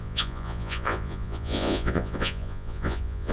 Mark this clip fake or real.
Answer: fake